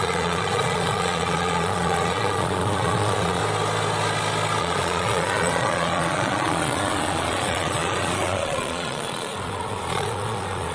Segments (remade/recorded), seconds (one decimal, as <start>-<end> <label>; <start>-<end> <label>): 0.0-3.4 remade; 3.4-4.6 recorded; 4.6-10.7 remade